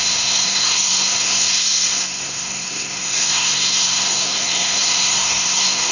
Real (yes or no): no